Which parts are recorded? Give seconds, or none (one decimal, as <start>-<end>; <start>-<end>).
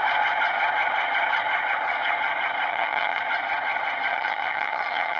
0.0-2.7; 3.2-4.1